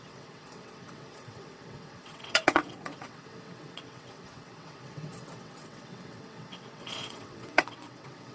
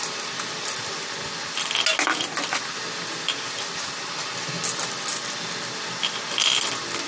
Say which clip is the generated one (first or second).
first